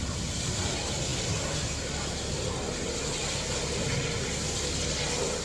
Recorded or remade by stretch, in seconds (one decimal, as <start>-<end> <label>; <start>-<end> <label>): 0.0-5.4 recorded